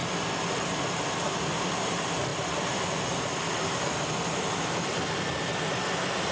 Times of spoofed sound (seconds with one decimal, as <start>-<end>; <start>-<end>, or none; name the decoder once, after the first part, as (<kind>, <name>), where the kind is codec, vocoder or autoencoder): 0.0-1.5 (vocoder, BigVGAN v2); 2.3-4.6